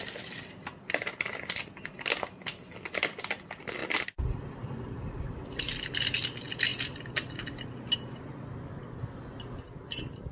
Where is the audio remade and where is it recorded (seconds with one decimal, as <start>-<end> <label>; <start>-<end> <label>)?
0.0-3.8 recorded; 3.8-5.6 remade; 5.6-6.7 recorded; 6.7-9.4 remade; 9.4-10.3 recorded